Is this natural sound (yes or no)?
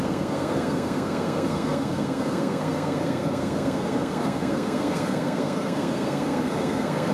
no